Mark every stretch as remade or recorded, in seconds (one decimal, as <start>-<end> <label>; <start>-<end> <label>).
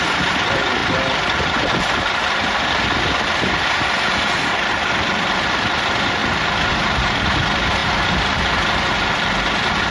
0.0-6.2 remade; 6.2-6.7 recorded; 6.7-7.8 remade; 7.8-8.9 recorded; 8.9-9.9 remade